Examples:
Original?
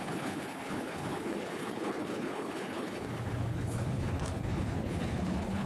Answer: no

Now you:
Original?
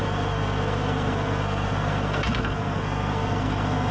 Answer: no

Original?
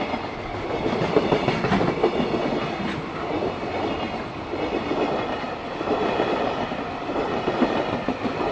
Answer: yes